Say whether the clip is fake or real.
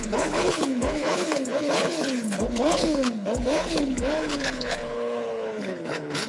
fake